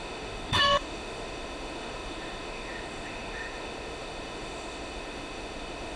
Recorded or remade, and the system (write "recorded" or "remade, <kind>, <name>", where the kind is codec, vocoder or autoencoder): remade, autoencoder, DAC-VAE